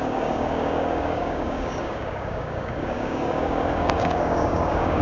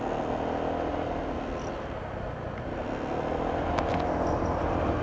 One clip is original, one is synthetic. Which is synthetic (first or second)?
first